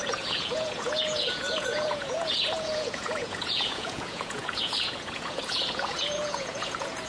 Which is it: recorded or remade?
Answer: remade